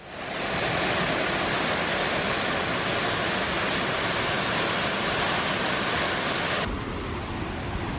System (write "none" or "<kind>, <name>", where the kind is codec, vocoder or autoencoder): none